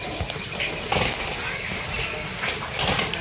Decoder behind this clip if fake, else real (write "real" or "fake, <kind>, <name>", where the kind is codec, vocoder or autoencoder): real